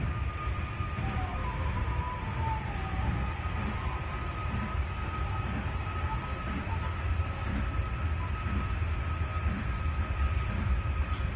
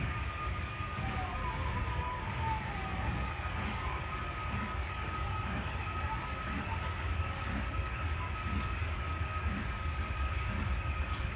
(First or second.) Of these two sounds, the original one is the first